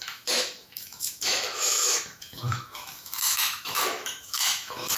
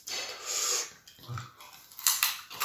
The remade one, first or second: first